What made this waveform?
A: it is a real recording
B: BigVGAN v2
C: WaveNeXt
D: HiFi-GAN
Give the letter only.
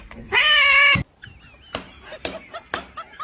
A